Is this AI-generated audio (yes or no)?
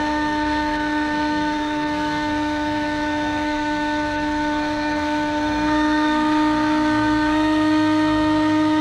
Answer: yes